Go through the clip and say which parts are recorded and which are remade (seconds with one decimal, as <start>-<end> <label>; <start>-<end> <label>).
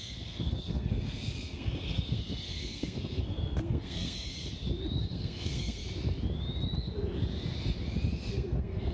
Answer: 0.0-4.3 remade; 4.3-5.1 recorded; 5.1-5.8 remade; 5.8-8.3 recorded; 8.3-8.9 remade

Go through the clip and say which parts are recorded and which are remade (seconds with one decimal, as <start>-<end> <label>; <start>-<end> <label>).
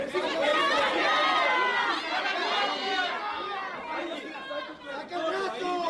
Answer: 0.0-5.9 recorded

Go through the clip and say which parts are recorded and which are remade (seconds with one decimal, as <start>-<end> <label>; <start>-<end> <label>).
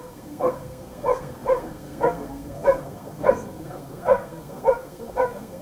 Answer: 0.0-5.6 remade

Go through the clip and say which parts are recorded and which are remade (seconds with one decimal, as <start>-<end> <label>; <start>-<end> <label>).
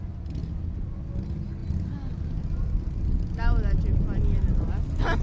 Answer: 0.0-5.2 recorded